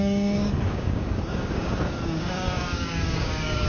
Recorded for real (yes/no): no